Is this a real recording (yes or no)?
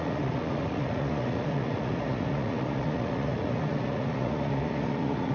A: no